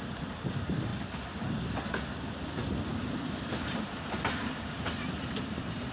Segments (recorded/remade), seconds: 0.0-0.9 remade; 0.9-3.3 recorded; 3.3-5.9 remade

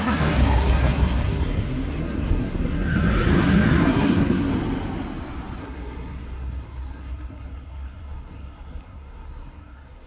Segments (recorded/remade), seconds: 0.0-4.5 remade; 4.5-5.6 recorded; 5.6-10.1 remade

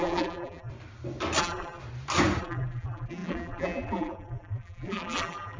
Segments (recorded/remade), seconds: 0.0-0.7 remade; 0.7-1.4 recorded; 1.4-1.8 remade; 1.8-2.4 recorded; 2.4-5.6 remade

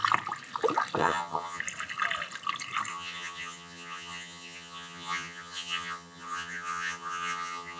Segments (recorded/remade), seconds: 0.0-1.0 recorded; 1.0-1.6 remade; 1.6-2.9 recorded; 2.9-7.8 remade